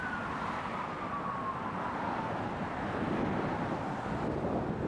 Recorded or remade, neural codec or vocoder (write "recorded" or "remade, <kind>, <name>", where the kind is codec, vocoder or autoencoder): recorded